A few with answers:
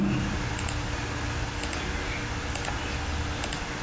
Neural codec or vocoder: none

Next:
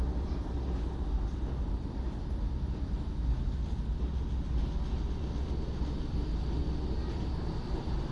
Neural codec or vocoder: none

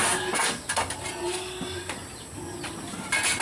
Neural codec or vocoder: none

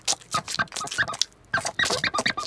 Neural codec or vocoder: none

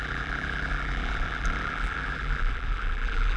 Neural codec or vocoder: vocoder, BigVGAN v2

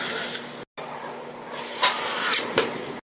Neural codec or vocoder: none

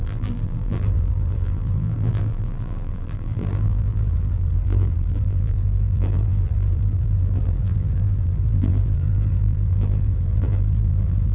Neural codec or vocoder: vocoder, BigVGAN v2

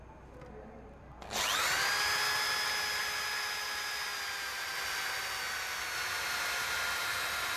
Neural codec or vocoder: none